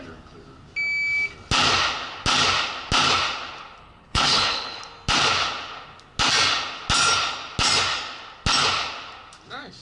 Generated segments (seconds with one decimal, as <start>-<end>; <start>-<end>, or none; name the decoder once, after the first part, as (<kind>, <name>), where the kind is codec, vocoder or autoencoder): 3.8-4.8 (codec, HILCodec)